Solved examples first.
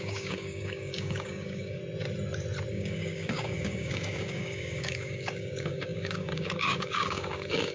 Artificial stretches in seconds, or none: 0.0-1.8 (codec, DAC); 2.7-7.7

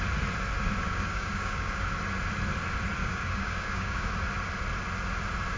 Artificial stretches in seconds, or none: 0.8-1.9 (codec, DAC); 3.0-4.1

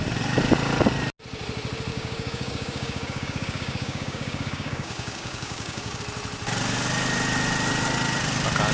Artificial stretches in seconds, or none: 1.9-6.0 (codec, DAC)

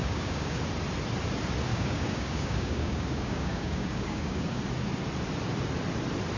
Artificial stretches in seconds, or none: 0.0-0.6 (codec, DAC); 1.7-4.6